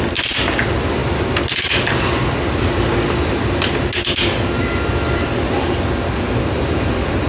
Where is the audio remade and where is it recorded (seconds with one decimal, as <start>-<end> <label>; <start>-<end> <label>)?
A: 0.0-7.3 recorded